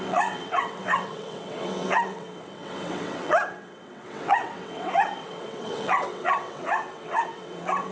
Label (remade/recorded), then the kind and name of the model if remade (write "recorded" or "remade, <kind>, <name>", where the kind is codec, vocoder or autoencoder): remade, vocoder, WaveNeXt